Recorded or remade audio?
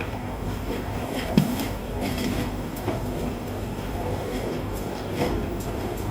remade